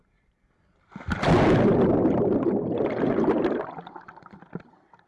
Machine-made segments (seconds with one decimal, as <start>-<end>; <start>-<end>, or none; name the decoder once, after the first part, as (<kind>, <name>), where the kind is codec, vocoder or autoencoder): none